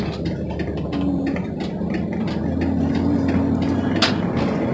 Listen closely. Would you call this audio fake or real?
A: real